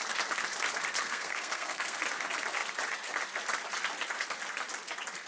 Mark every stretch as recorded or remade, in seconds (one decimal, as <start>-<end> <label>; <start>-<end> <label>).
0.0-1.0 recorded; 1.0-2.0 remade; 2.0-5.3 recorded